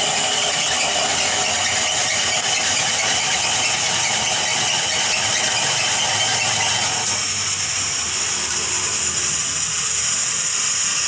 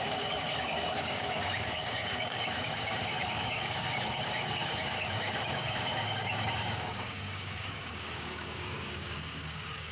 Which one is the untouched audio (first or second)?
first